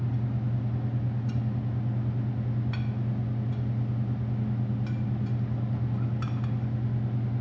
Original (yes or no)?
yes